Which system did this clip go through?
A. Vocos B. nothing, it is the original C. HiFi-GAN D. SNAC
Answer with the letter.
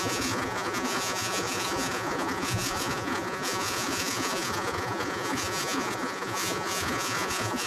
A